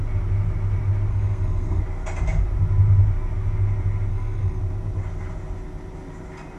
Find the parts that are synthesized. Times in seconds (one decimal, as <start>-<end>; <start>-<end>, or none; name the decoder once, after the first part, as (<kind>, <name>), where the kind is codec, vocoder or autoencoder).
1.1-1.8 (codec, SNAC); 4.1-4.6